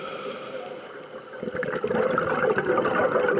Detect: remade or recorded recorded